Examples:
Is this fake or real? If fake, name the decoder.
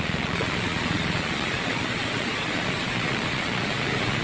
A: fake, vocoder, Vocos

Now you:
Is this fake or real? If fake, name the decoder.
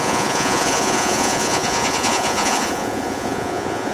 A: fake, vocoder, Vocos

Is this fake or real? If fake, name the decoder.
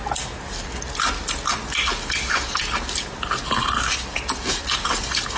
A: real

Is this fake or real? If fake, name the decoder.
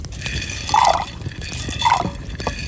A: real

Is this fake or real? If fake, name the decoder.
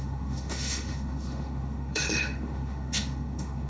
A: fake, autoencoder, DAC-VAE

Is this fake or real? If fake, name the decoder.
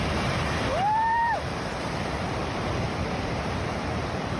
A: fake, vocoder, BigVGAN v2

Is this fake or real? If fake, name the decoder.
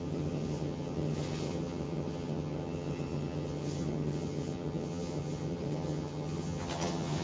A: fake, vocoder, HiFi-GAN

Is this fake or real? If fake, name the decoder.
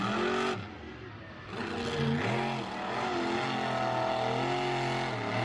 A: real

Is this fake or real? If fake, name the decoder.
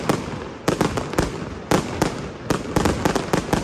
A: real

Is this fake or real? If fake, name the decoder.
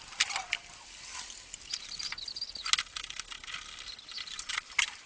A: real